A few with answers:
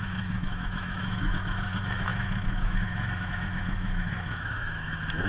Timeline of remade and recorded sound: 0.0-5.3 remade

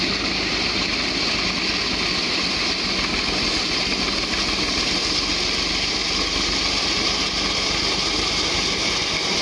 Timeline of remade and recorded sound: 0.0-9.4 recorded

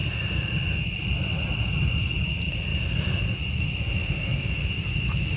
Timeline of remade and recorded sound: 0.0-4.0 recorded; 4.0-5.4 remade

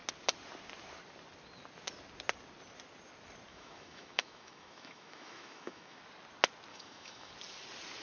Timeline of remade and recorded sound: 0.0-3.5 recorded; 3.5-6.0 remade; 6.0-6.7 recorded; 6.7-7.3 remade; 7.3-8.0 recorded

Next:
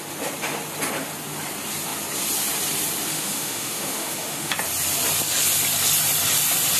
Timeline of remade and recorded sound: 0.0-3.1 recorded; 3.1-4.5 remade; 4.5-6.8 recorded